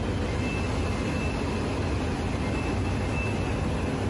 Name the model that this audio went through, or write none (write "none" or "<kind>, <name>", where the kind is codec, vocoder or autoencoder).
none